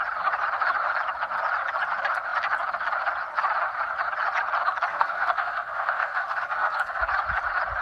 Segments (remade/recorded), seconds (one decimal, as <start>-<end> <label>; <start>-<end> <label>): 0.0-4.9 recorded; 4.9-7.0 remade; 7.0-7.8 recorded